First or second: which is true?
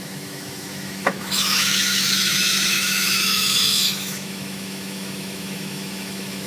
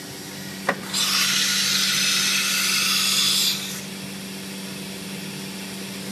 second